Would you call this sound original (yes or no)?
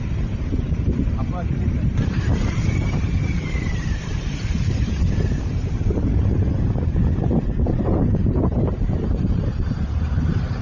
no